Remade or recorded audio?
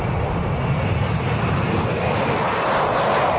recorded